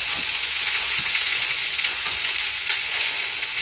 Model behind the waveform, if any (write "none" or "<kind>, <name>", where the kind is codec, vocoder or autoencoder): vocoder, Vocos